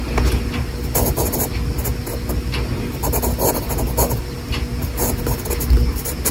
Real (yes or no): yes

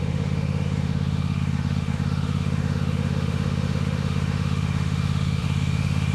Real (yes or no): no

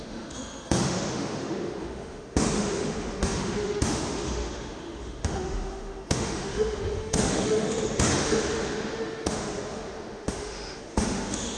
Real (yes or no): no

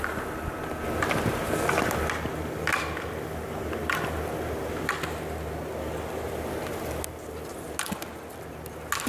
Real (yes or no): yes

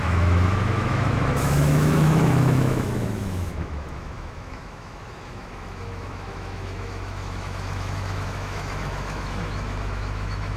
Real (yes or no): no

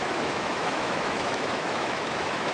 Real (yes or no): no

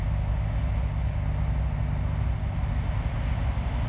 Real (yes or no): yes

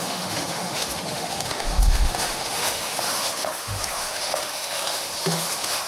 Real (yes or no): no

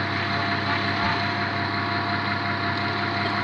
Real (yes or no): yes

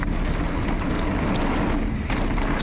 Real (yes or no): yes